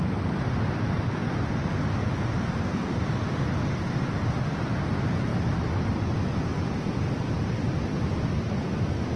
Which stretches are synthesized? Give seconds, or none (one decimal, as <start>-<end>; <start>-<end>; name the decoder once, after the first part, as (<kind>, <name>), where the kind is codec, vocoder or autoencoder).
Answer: none